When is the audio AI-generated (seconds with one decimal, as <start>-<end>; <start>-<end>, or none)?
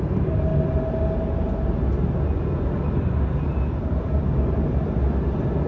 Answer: 0.0-0.5; 3.7-5.7